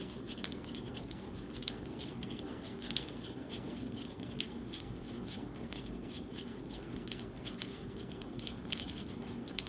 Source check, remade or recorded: remade